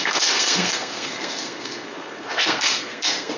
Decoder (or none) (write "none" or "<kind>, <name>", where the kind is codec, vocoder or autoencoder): codec, SNAC